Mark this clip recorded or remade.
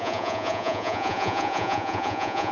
remade